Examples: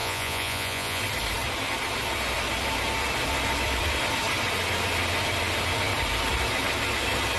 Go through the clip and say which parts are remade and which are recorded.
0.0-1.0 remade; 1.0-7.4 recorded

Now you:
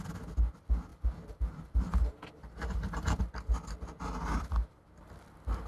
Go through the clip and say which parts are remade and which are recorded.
0.0-0.9 recorded; 0.9-3.2 remade; 3.2-5.7 recorded

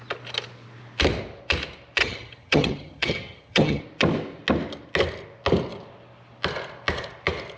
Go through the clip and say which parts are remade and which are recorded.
0.0-2.0 recorded; 2.0-3.8 remade; 3.8-7.6 recorded

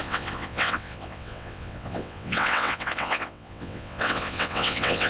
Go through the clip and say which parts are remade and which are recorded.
0.0-5.1 remade

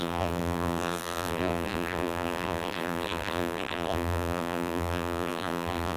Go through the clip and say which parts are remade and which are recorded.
0.0-6.0 remade

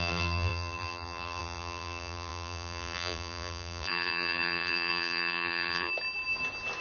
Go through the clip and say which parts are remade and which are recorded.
0.0-5.9 remade; 5.9-6.8 recorded

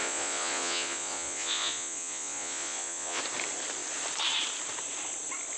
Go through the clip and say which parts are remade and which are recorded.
0.0-3.2 remade; 3.2-5.6 recorded

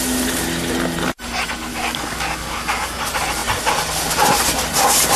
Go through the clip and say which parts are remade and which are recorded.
0.0-1.7 recorded; 1.7-3.0 remade; 3.0-5.2 recorded